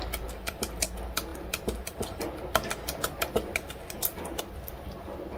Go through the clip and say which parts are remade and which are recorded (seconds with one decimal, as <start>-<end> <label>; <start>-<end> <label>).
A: 0.0-5.4 recorded